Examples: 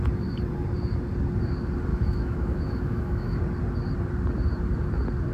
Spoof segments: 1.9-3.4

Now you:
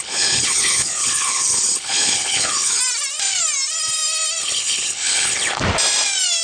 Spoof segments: 0.0-2.8; 4.4-5.6

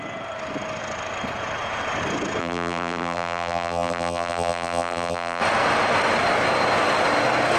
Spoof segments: 2.4-5.4

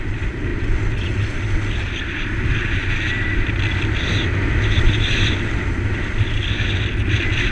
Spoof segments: 0.0-0.5; 1.9-2.8